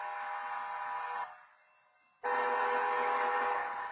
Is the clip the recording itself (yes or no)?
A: yes